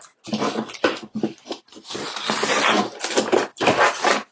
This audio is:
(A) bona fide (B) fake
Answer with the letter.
B